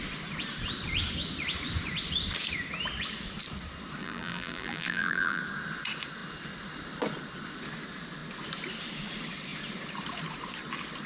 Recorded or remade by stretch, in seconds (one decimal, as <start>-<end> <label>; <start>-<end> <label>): 0.0-4.0 recorded; 4.0-5.4 remade; 5.4-11.1 recorded